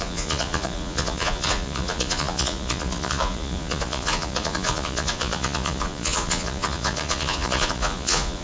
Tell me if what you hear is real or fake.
fake